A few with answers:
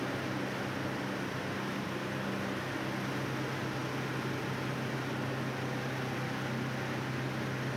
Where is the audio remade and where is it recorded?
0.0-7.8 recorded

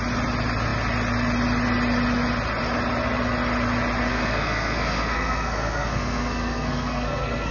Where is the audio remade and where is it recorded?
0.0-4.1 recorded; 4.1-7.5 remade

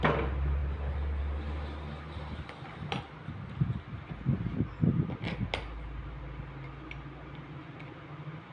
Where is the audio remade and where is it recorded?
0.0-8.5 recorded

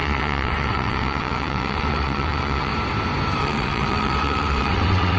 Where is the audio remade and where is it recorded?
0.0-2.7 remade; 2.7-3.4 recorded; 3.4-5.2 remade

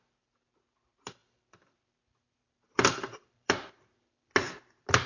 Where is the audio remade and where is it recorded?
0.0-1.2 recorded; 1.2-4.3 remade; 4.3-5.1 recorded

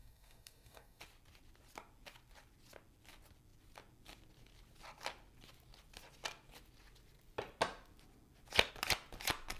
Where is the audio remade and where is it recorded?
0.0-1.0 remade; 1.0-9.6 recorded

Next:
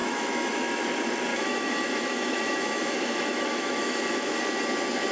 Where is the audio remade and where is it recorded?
0.0-0.7 remade; 0.7-1.3 recorded; 1.3-4.4 remade; 4.4-5.1 recorded